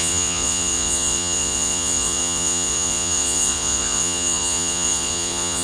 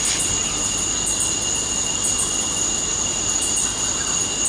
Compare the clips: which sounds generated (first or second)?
first